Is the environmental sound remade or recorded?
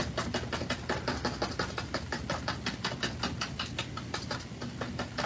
recorded